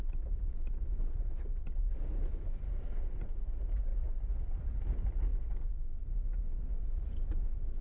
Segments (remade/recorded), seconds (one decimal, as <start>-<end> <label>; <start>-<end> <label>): 0.0-2.1 remade; 2.1-3.5 recorded; 3.5-5.3 remade; 5.3-6.6 recorded; 6.6-7.8 remade